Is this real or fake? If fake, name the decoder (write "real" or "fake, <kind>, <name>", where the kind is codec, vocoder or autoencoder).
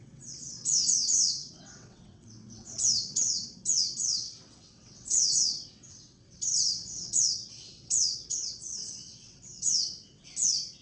fake, vocoder, WaveNeXt